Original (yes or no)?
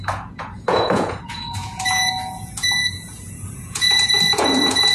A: no